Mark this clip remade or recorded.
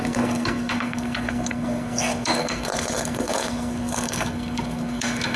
remade